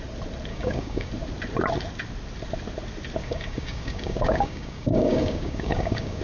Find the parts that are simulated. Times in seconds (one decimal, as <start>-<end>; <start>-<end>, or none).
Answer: 0.5-1.1; 3.2-6.2